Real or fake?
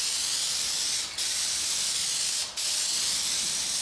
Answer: real